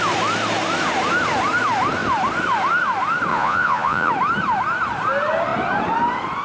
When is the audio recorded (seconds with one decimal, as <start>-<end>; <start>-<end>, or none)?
0.0-3.3; 4.1-6.4

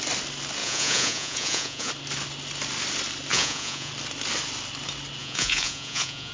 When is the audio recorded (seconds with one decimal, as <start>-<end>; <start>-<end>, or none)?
0.0-0.6; 1.9-3.3; 3.9-5.2

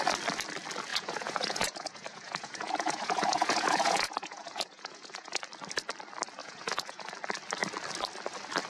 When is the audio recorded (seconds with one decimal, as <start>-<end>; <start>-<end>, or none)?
0.0-0.9; 5.4-6.4; 7.1-8.7

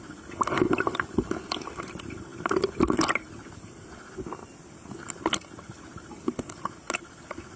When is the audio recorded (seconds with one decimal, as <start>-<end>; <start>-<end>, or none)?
0.0-7.6

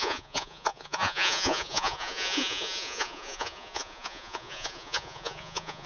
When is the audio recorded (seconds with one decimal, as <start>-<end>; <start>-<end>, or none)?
none